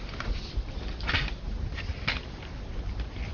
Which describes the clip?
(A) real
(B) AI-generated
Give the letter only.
A